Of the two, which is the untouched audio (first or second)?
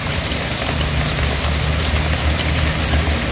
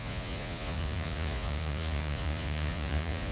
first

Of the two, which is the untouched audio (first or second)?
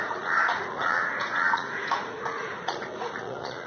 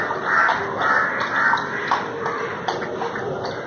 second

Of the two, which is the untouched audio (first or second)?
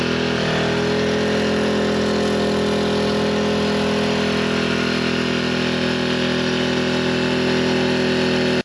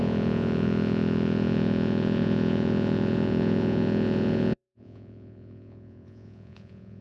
first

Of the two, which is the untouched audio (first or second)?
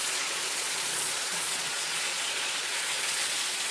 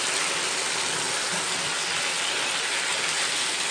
second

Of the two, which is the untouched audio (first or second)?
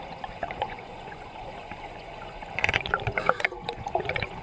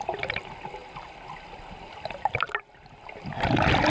second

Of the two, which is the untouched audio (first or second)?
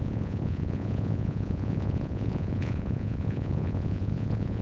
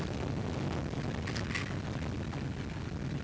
second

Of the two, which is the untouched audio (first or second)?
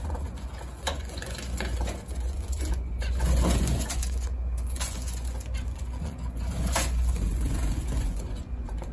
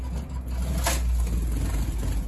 second